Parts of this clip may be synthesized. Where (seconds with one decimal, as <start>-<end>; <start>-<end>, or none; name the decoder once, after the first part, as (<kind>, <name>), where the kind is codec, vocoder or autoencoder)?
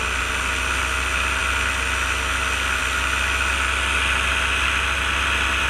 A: none